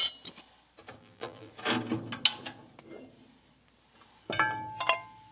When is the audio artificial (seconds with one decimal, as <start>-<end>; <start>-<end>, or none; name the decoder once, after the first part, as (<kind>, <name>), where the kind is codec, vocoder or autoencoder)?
1.0-1.5 (vocoder, BigVGAN v2)